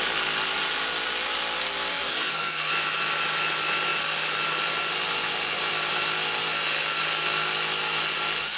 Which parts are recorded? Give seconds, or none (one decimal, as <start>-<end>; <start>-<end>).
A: 0.0-1.9; 2.7-8.6